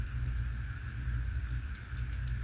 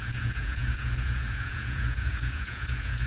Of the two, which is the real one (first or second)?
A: first